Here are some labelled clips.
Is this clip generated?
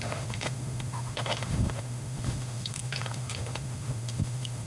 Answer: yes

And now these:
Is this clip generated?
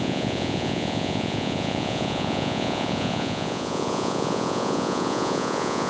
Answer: yes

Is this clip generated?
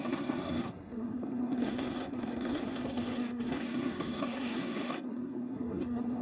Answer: yes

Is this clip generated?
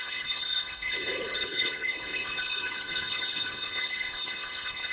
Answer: yes